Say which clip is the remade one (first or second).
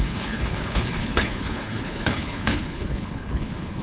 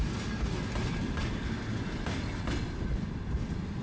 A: first